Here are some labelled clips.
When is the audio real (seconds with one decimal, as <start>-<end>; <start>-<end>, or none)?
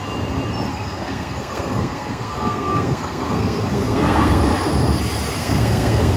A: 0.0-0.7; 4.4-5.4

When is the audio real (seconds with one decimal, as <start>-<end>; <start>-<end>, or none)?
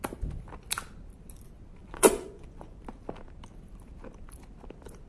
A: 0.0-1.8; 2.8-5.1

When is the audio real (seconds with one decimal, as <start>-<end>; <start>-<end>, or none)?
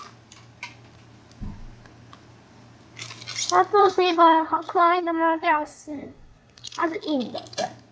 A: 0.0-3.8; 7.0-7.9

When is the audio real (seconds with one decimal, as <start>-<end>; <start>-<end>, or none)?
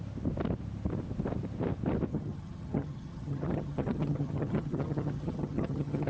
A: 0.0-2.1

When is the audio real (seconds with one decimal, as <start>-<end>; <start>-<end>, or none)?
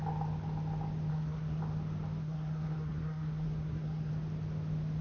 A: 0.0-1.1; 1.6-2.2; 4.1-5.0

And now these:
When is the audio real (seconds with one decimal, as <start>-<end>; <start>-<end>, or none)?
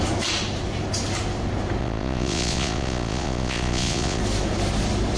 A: 0.0-1.8; 4.2-5.2